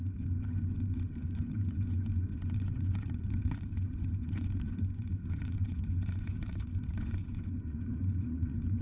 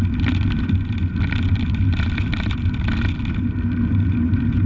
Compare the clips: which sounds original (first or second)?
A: second